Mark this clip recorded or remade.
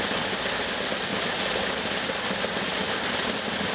recorded